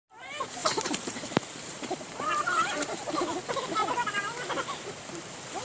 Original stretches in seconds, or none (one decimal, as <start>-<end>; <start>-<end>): 0.0-0.6; 3.1-5.6

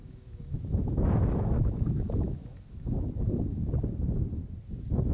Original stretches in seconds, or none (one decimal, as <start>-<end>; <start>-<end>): 3.1-5.1

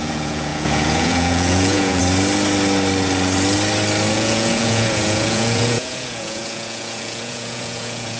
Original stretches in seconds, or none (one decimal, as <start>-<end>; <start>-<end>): 2.0-4.1

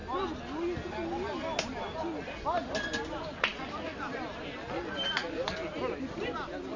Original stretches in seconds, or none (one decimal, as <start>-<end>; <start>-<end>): 0.0-6.8

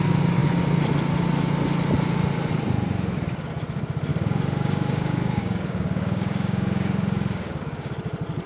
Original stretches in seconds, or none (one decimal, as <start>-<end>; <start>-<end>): 0.0-4.1; 7.9-8.5

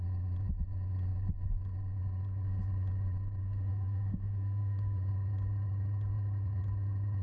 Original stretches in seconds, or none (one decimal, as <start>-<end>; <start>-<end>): 0.0-3.4; 5.1-7.2

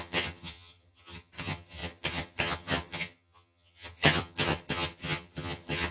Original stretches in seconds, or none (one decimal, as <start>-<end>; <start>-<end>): none